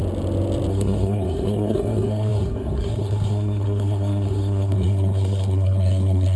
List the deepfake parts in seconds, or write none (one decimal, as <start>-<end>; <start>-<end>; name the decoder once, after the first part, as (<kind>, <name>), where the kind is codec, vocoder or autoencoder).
0.7-6.4 (codec, SNAC)